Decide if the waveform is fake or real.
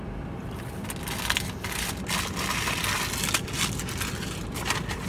real